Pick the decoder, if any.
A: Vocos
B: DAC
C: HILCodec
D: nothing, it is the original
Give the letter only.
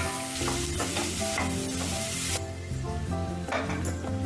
D